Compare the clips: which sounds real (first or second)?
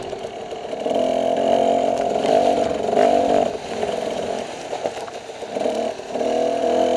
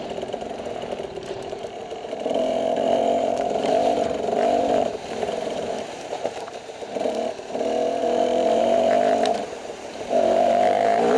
first